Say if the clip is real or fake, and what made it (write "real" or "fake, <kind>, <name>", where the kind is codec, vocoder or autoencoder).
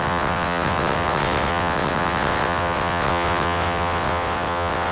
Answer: fake, vocoder, WaveNeXt